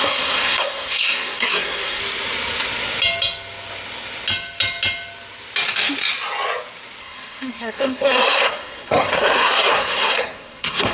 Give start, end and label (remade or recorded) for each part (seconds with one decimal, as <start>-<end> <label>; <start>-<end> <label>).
0.0-2.0 remade; 2.0-7.0 recorded; 7.0-10.9 remade